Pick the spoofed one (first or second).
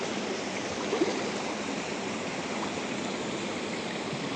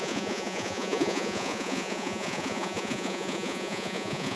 second